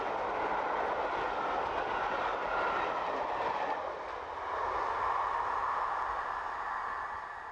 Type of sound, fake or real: real